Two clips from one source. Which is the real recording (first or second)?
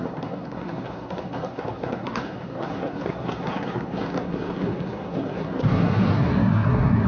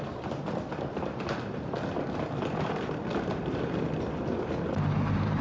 second